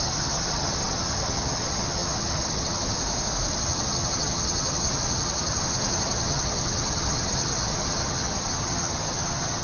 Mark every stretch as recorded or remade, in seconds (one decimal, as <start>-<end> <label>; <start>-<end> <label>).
0.0-3.0 remade; 3.0-3.5 recorded; 3.5-9.6 remade